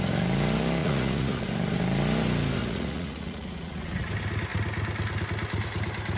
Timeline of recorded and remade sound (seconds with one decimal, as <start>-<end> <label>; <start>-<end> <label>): 0.0-0.8 recorded; 0.8-1.4 remade; 1.4-2.6 recorded; 2.6-4.1 remade; 4.1-6.2 recorded